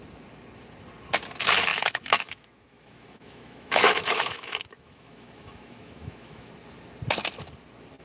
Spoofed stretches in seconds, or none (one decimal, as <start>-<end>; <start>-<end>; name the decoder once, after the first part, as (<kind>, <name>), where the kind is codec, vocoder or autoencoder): 1.7-6.5 (autoencoder, DAC-VAE)